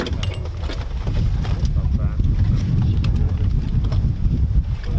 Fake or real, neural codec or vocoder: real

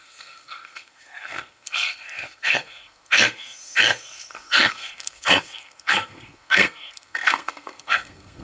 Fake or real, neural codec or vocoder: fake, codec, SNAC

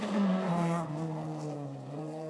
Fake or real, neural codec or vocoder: fake, codec, SNAC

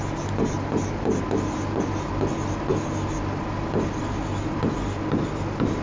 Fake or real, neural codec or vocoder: real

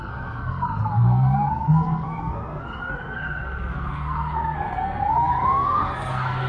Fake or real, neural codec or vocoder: fake, codec, SNAC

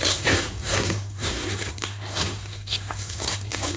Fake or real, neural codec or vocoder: fake, codec, SNAC